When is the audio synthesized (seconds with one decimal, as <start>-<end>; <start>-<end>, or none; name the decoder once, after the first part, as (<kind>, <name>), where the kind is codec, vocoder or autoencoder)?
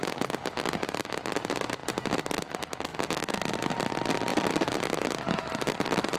none